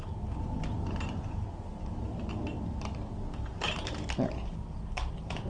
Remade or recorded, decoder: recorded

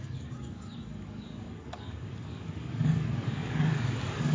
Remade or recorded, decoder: remade, codec, DAC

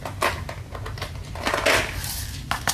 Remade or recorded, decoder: recorded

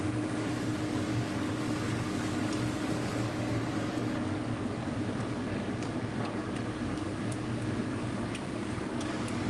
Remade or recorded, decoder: remade, codec, DAC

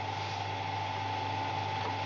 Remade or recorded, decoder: recorded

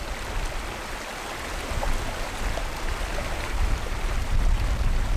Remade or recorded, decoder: recorded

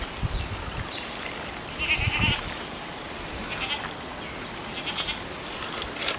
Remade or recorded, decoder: recorded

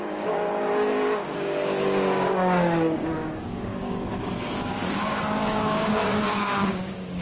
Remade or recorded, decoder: remade, codec, DAC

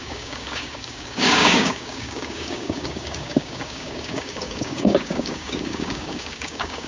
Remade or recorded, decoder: remade, codec, DAC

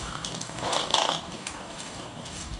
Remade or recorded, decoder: remade, codec, DAC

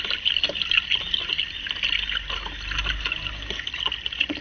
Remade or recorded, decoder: recorded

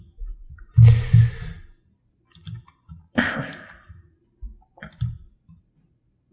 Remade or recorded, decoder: recorded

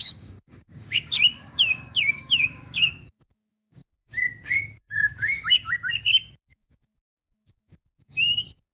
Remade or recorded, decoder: remade, codec, DAC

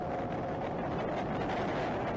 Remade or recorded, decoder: recorded